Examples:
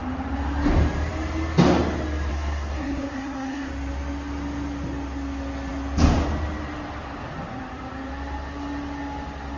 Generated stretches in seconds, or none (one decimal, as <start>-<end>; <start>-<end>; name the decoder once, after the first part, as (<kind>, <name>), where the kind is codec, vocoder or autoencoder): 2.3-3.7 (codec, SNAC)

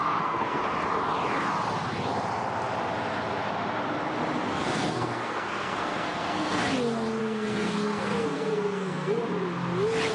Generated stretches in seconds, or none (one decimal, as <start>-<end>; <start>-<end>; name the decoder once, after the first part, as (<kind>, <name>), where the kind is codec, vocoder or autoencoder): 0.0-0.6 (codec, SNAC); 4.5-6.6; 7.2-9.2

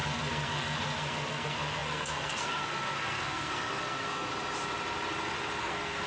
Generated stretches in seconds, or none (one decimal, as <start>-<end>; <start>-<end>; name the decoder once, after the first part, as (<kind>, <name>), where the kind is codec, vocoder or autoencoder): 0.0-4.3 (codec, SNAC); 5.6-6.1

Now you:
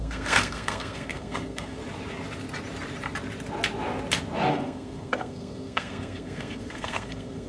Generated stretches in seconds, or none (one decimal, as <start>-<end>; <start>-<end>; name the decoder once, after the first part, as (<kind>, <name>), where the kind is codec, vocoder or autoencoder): 0.0-1.8 (codec, SNAC); 4.5-7.5

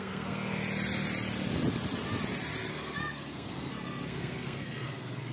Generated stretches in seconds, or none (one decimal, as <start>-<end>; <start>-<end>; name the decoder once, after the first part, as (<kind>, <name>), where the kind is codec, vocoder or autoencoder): 0.0-0.6 (codec, SNAC); 2.7-5.3

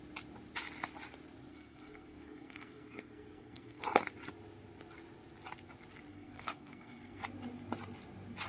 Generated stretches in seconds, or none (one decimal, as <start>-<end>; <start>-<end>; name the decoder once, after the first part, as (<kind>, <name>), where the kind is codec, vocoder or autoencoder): 1.5-3.8 (codec, SNAC); 6.1-7.2